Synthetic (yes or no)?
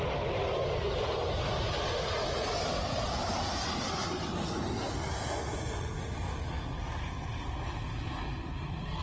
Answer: no